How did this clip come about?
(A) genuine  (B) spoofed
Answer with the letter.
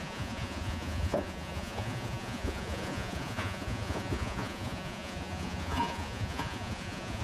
B